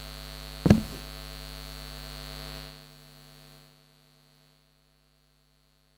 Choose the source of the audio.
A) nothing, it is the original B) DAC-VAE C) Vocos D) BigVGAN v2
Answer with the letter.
A